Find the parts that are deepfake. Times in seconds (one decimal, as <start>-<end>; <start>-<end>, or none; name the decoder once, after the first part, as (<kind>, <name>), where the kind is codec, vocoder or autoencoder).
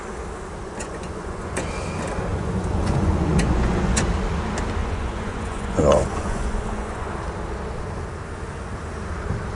0.6-1.7 (vocoder, Vocos); 2.3-4.0; 4.8-7.1